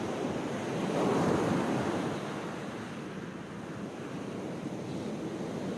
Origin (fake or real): real